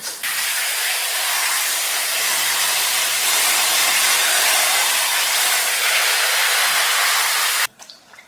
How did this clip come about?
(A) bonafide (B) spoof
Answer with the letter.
B